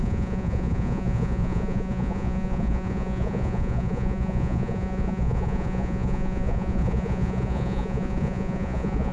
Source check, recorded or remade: remade